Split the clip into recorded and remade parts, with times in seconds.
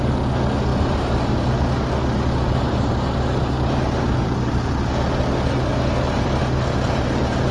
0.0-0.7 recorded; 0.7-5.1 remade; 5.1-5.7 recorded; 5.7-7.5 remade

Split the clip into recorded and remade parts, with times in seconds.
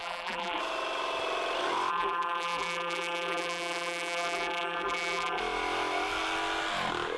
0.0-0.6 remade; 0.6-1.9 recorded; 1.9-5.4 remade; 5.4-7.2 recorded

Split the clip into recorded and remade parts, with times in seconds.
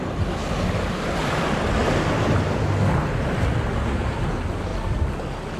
0.0-0.4 recorded; 0.4-1.4 remade; 1.4-5.6 recorded